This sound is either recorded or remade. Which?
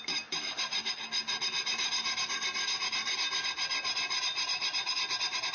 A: recorded